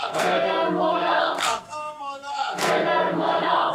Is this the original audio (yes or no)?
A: no